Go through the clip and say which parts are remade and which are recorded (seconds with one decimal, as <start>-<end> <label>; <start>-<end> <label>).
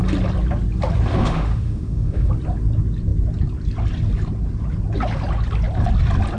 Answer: 0.0-1.1 recorded; 1.1-2.3 remade; 2.3-6.4 recorded